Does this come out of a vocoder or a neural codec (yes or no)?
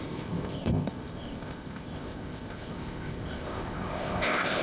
yes